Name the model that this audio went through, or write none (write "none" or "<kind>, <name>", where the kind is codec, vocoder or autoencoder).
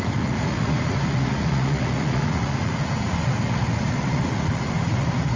vocoder, Vocos